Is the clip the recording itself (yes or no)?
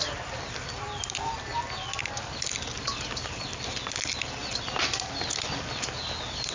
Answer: yes